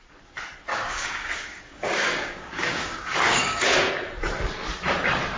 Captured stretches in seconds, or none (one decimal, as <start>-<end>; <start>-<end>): 0.0-0.7; 3.9-5.4